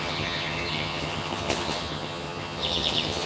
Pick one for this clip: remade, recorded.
remade